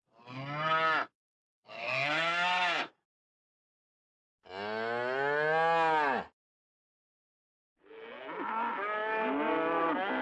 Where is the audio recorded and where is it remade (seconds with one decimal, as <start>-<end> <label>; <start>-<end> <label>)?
0.0-1.5 recorded; 1.5-2.9 remade; 2.9-10.2 recorded